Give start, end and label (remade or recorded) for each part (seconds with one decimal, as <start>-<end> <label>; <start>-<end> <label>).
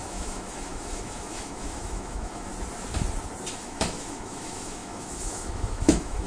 0.0-2.5 remade; 2.5-3.5 recorded; 3.5-6.3 remade